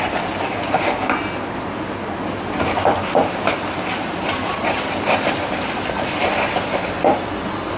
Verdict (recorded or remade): recorded